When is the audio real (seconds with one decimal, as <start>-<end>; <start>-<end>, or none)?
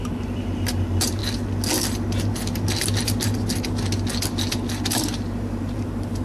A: 1.2-4.9